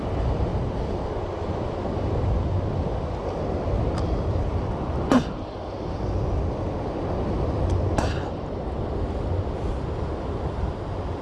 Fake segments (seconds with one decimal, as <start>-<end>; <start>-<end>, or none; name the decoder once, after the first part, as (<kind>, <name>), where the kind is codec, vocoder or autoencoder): none